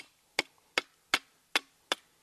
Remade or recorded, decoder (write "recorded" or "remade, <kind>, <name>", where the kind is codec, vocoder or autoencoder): recorded